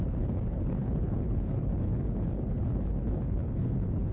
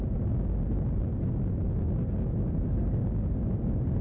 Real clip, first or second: second